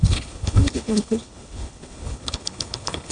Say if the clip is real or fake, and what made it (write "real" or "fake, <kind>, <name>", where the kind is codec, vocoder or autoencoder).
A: fake, codec, HILCodec